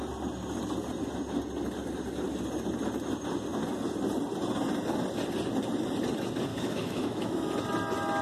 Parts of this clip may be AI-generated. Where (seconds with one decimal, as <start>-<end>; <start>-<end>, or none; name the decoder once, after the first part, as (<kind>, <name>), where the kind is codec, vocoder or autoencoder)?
6.5-7.5 (autoencoder, DAC-VAE)